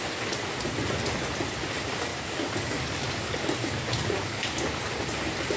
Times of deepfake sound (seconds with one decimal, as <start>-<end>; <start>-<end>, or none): 2.1-4.8